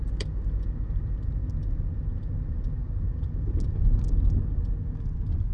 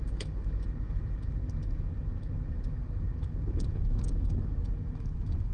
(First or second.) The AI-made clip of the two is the second